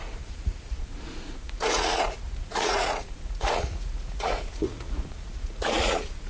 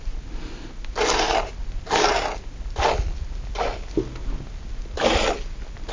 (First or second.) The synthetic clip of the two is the first